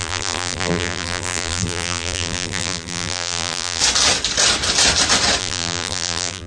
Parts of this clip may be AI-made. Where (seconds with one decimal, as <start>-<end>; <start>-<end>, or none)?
0.0-3.8; 5.4-6.5